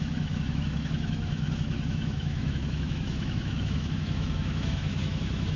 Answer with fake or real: fake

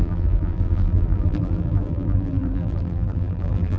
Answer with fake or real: fake